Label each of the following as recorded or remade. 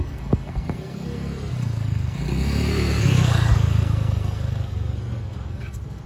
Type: remade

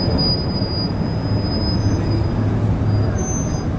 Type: recorded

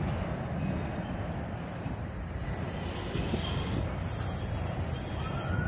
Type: recorded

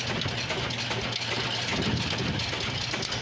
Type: recorded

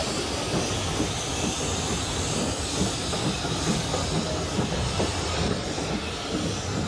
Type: recorded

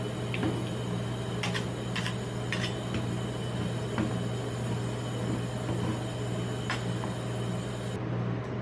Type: recorded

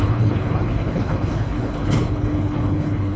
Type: remade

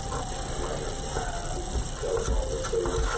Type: remade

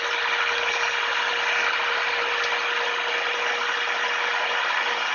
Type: recorded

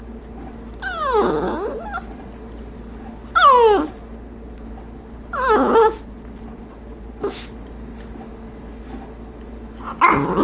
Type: recorded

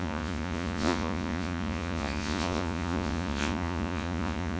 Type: remade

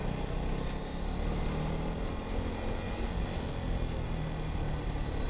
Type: recorded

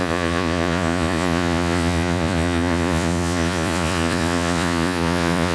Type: remade